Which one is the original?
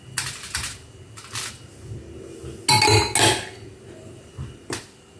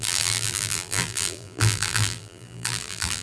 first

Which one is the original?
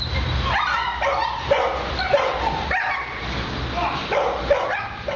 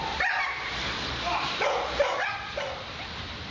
first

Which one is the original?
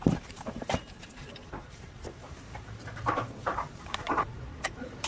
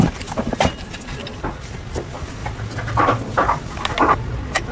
second